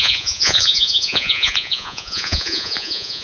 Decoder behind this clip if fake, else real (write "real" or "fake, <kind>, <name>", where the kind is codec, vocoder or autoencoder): fake, vocoder, Vocos